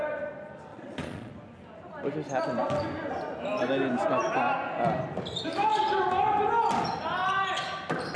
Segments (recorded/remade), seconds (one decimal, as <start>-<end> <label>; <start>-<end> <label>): 0.0-0.7 recorded; 0.7-1.3 remade; 1.3-8.2 recorded